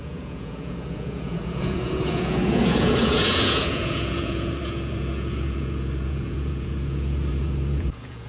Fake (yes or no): yes